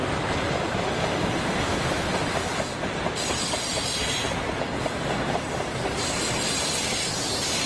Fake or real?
real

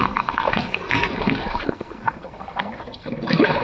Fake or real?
fake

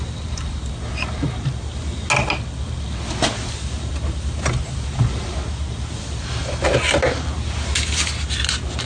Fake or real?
real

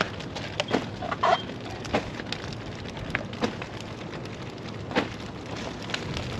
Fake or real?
real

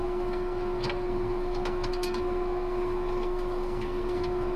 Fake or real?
fake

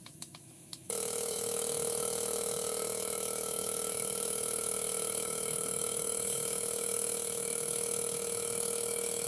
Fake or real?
fake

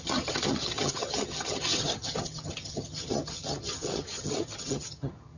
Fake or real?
fake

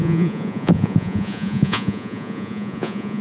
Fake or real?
fake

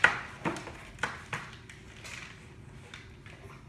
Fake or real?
real